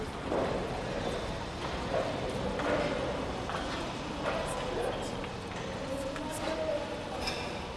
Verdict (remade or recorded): recorded